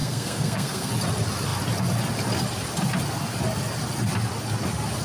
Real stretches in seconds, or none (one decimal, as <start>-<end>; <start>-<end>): 0.9-5.0